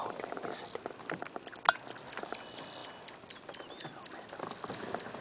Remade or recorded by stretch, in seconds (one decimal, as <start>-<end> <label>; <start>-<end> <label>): 0.0-2.2 recorded; 2.2-2.8 remade; 2.8-5.2 recorded